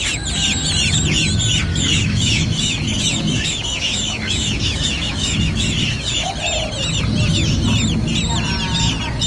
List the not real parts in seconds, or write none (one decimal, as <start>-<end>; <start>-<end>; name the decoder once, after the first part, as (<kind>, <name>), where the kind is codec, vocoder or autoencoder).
1.7-6.3 (autoencoder, DAC-VAE)